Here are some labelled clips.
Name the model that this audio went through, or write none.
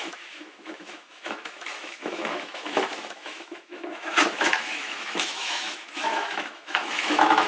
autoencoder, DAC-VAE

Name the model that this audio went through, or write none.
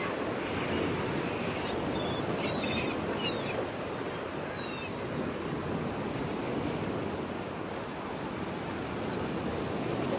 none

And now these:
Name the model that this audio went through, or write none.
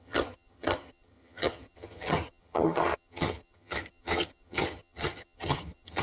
vocoder, HiFi-GAN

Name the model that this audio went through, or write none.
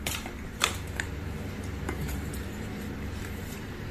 vocoder, BigVGAN v2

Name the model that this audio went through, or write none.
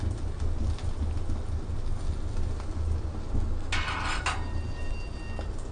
none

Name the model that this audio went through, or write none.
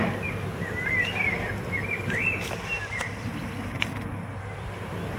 none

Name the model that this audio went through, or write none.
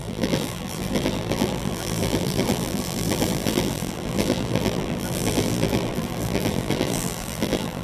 vocoder, BigVGAN v2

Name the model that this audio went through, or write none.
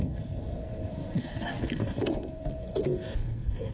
codec, SNAC